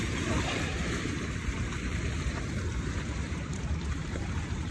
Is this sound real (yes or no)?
no